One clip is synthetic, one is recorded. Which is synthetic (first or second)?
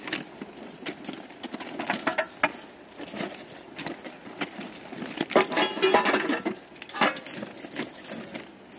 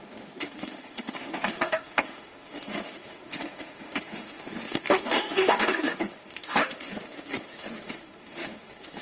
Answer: second